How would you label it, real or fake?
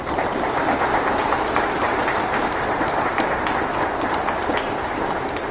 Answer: real